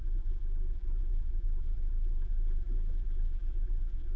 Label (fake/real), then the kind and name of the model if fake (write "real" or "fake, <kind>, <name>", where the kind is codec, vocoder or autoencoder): fake, vocoder, BigVGAN v2